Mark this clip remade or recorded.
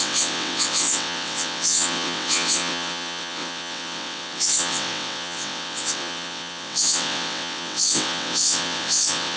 remade